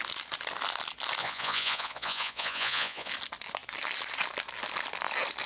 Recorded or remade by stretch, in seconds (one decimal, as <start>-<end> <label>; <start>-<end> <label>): 0.0-1.2 recorded; 1.2-3.1 remade; 3.1-5.5 recorded